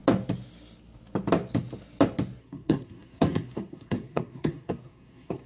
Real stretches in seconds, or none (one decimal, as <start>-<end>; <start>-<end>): 0.0-2.4